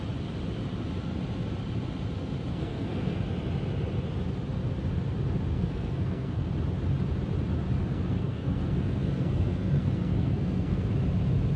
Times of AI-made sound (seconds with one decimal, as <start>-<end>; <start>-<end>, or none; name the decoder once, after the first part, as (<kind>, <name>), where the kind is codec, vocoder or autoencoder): 2.5-3.2 (codec, SNAC); 5.5-6.5; 7.8-10.9

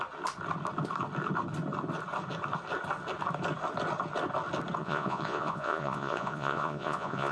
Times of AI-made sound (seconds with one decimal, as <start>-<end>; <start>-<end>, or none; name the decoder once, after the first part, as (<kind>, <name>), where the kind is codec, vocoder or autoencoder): 4.8-7.3 (vocoder, Vocos)

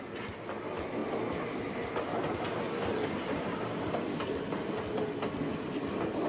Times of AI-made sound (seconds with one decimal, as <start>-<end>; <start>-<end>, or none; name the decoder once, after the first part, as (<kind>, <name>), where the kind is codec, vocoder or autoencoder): none